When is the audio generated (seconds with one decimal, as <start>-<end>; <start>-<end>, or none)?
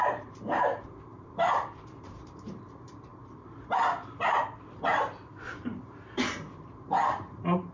0.0-3.1; 5.5-7.7